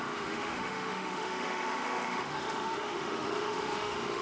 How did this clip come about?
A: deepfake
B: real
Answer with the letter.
A